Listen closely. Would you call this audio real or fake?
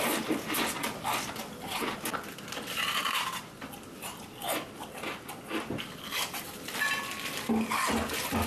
real